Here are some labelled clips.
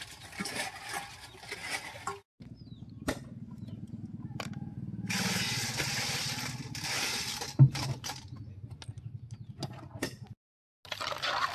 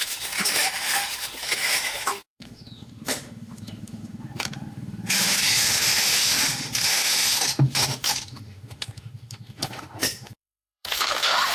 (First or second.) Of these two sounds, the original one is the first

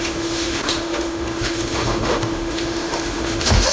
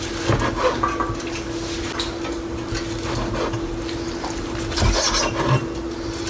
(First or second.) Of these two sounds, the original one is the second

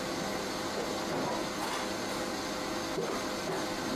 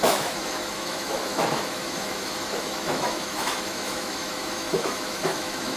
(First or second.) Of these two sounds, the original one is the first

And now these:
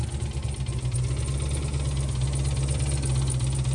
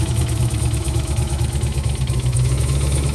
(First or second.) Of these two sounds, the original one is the first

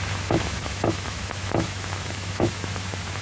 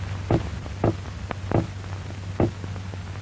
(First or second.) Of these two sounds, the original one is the second